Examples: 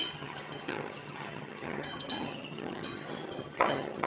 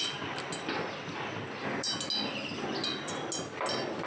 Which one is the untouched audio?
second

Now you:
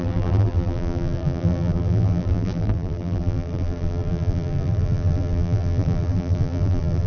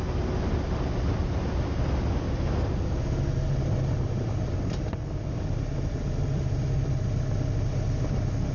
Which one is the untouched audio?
second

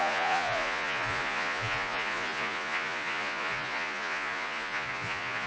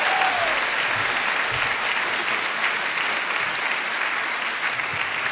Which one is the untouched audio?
second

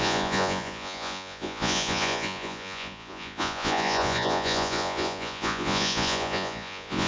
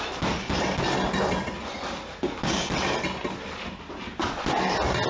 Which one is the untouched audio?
second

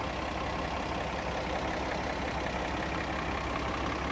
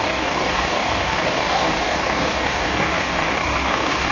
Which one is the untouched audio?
first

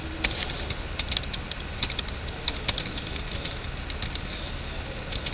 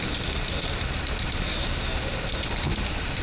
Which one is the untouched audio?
first